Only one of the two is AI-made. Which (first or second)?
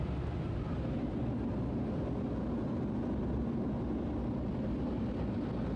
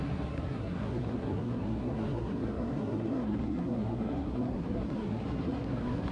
second